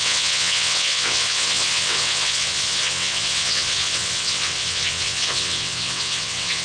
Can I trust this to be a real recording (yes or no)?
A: no